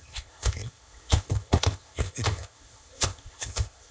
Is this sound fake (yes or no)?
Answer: yes